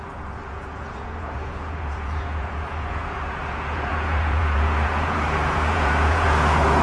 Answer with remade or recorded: remade